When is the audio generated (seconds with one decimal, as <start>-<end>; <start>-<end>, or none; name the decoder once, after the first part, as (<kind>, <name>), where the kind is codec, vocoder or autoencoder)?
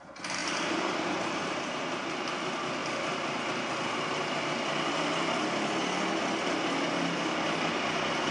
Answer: 0.4-1.8 (vocoder, BigVGAN v2)